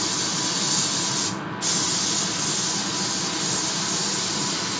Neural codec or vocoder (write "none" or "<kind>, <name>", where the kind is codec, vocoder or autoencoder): none